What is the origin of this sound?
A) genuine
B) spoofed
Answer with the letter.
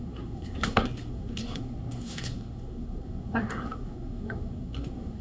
B